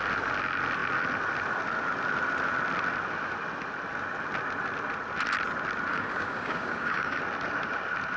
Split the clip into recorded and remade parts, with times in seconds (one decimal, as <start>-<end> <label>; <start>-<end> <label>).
0.0-5.9 recorded; 5.9-7.2 remade; 7.2-8.2 recorded